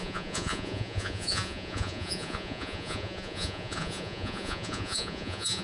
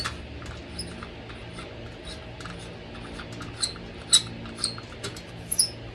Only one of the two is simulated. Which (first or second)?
first